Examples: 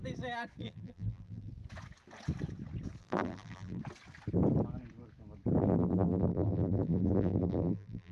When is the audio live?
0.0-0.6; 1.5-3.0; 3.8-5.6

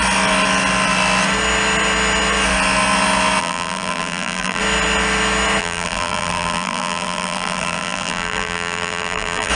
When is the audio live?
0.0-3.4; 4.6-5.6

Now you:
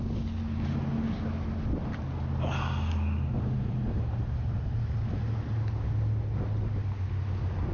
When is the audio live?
0.0-3.3; 5.1-7.7

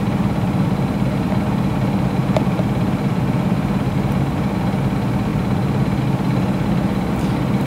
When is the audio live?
0.0-2.2; 4.3-5.3; 6.0-7.7

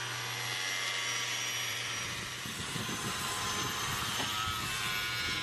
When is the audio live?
0.0-1.7; 4.9-5.4

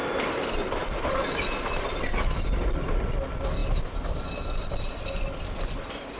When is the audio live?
0.0-3.6